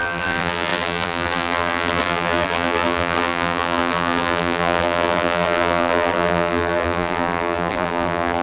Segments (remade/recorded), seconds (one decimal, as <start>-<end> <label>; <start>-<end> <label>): 0.0-8.4 remade